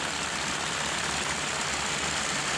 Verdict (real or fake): fake